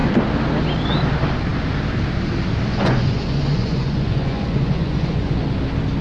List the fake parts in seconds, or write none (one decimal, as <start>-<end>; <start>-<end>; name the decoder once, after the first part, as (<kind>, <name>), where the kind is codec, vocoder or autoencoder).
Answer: 2.7-5.4 (vocoder, Vocos)